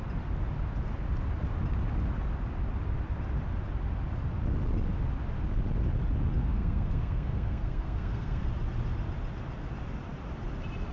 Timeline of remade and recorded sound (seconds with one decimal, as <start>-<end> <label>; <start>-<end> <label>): 0.0-6.4 recorded; 6.4-8.5 remade; 8.5-10.9 recorded